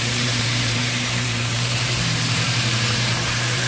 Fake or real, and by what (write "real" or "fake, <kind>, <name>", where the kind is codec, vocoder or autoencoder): fake, vocoder, BigVGAN v2